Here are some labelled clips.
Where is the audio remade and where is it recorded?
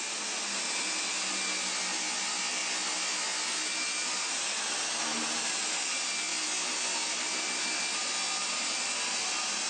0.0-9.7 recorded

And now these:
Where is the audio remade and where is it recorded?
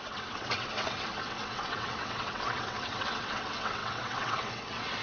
0.0-5.0 remade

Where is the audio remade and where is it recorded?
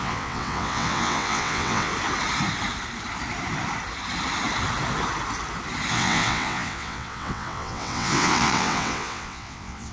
0.0-1.9 remade; 1.9-5.9 recorded; 5.9-9.9 remade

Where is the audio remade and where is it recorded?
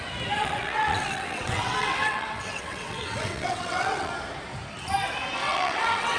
0.0-0.4 recorded; 0.4-4.1 remade; 4.1-5.4 recorded; 5.4-6.2 remade